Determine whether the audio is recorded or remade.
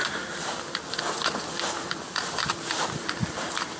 recorded